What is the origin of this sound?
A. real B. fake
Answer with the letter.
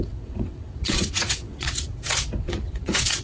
B